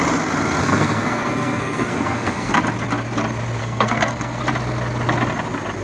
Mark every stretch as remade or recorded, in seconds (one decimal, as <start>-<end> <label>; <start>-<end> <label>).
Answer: 0.0-0.6 recorded; 0.6-2.6 remade; 2.6-3.6 recorded; 3.6-4.4 remade; 4.4-5.8 recorded